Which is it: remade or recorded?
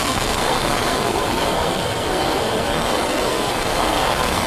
remade